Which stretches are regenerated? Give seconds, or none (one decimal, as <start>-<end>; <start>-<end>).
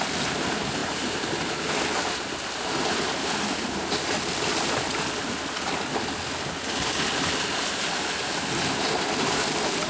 none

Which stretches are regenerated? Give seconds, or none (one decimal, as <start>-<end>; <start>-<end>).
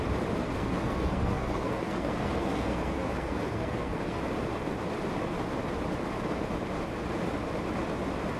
0.4-4.2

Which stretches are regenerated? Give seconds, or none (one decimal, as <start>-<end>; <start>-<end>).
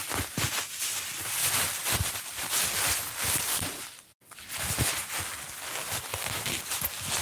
1.4-2.5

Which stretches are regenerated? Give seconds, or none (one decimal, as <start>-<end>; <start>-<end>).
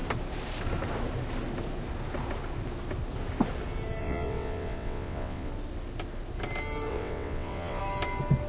4.0-5.5; 6.9-7.8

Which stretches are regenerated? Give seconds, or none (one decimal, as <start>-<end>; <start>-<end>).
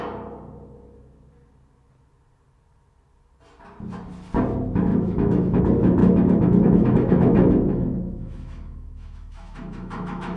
4.9-5.6; 6.0-10.4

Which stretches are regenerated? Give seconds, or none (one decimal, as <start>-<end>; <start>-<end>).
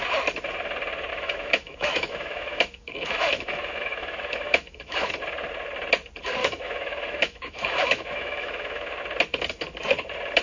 1.1-5.1; 6.4-9.0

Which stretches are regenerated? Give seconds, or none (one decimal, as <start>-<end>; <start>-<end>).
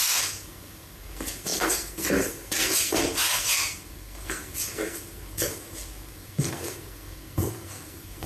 0.0-8.3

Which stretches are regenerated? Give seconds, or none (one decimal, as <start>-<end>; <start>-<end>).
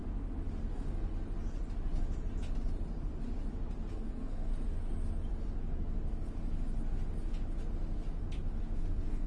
0.7-1.1; 3.9-4.5; 8.8-9.3